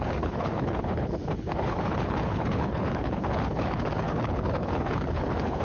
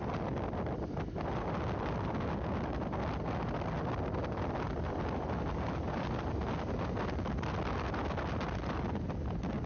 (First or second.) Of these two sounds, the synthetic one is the first